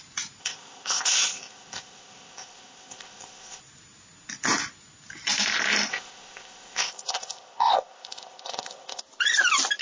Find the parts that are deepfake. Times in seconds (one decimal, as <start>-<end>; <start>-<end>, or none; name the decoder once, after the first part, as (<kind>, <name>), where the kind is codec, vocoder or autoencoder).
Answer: 0.4-3.6 (codec, ZipCodec); 5.9-9.0